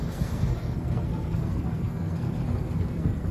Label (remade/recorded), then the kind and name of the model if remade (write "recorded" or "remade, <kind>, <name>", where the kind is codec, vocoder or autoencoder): remade, codec, SNAC